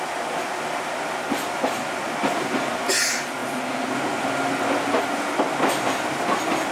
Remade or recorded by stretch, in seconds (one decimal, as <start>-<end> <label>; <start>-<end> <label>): 0.0-6.7 recorded